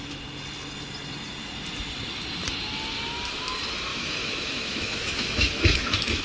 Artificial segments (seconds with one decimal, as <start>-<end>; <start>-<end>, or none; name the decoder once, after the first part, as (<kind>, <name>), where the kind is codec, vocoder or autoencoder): 3.9-6.2 (autoencoder, DAC-VAE)